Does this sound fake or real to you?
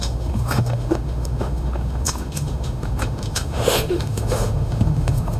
fake